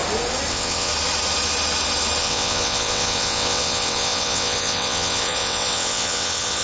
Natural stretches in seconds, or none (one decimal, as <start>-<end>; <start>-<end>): 0.0-0.5; 0.9-2.2